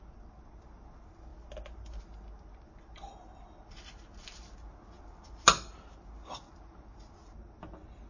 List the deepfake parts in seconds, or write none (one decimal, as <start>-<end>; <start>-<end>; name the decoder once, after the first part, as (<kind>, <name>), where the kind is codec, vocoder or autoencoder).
none